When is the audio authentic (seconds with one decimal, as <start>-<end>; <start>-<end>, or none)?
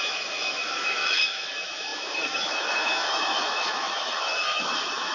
none